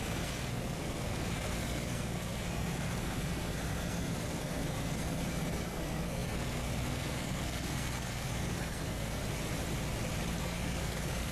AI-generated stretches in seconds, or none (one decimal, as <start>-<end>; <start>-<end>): 0.0-9.2; 10.4-11.3